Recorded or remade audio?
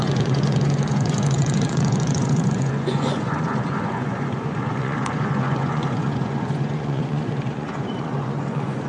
remade